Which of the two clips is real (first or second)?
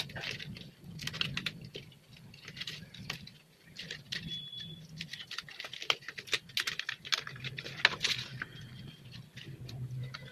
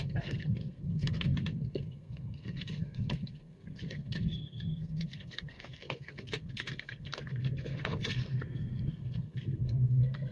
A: first